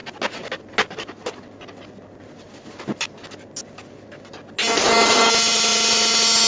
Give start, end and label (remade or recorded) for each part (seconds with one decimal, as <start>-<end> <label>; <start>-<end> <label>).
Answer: 0.0-6.5 recorded